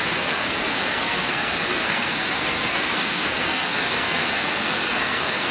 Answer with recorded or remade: remade